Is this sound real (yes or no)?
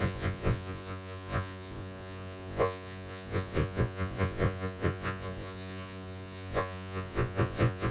no